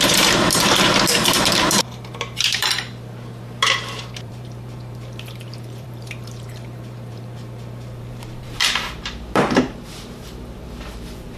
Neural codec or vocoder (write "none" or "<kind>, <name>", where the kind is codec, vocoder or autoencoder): vocoder, BigVGAN v2